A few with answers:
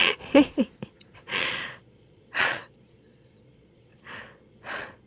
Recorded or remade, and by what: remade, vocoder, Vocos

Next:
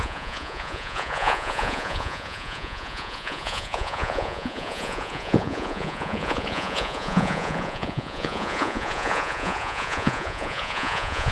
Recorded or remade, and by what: remade, vocoder, Vocos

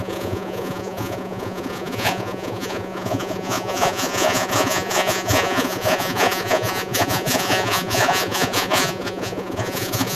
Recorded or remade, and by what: remade, vocoder, Vocos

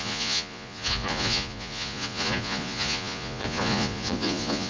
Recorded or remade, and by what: remade, vocoder, Vocos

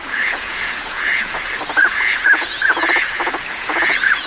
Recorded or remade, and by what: remade, vocoder, Vocos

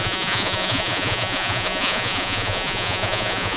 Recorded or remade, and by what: remade, vocoder, Vocos